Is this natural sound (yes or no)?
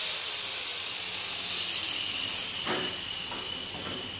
yes